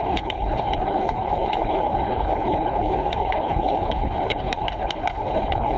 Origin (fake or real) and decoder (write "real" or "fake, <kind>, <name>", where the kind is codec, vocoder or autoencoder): fake, codec, HILCodec